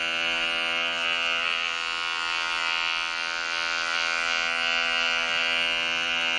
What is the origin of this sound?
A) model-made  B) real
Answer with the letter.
B